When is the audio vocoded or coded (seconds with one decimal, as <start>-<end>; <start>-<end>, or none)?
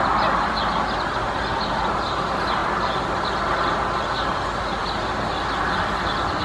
none